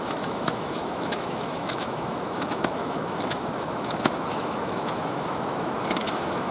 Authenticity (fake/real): fake